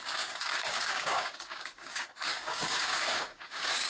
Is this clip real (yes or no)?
no